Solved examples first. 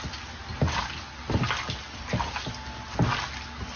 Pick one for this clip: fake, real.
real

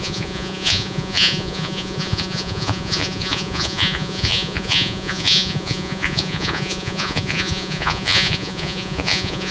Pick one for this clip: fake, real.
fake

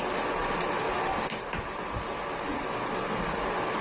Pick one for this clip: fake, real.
real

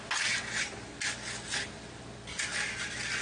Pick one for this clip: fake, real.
real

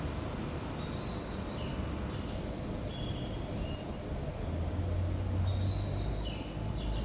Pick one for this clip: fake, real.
real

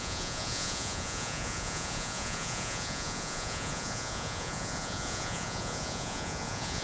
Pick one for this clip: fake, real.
fake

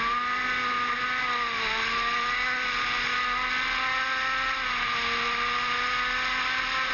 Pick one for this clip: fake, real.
real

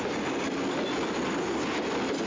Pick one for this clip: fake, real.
real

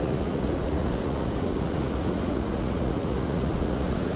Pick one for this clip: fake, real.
fake